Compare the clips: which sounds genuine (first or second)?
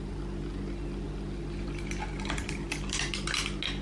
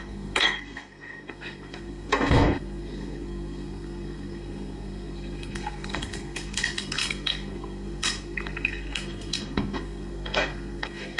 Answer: first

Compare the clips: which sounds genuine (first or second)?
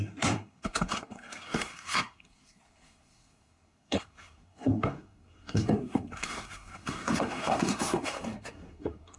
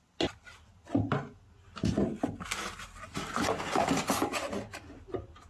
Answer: second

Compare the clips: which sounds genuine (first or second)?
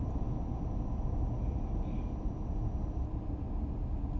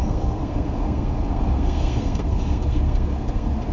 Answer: first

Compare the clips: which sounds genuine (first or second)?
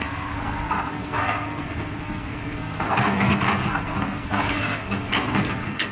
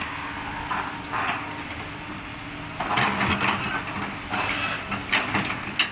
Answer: second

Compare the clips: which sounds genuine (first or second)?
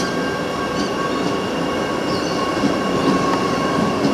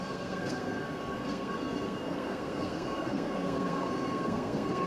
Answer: first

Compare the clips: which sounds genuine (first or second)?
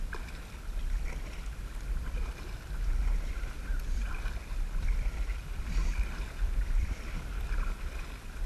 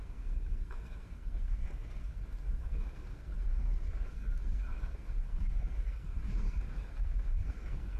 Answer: first